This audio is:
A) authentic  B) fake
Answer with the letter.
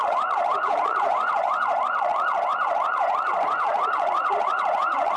B